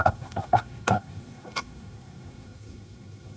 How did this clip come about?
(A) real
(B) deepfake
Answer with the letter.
B